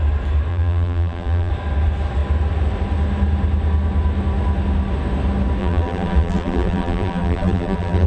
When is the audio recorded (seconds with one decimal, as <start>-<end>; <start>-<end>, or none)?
0.0-0.5; 1.5-5.6